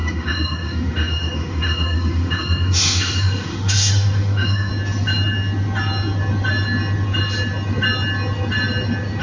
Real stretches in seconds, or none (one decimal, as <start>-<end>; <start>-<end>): 4.7-9.2